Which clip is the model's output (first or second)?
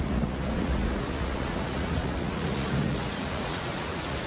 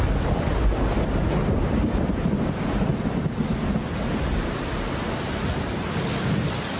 first